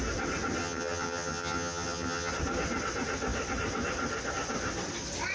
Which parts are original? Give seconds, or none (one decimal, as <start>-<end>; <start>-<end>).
0.0-0.6; 2.3-5.3